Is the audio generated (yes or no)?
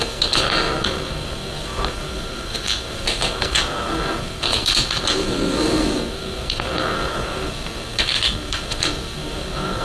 yes